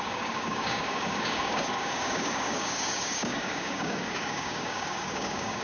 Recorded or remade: remade